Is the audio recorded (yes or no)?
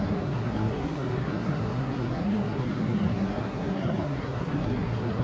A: no